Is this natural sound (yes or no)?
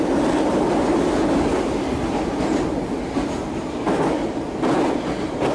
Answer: yes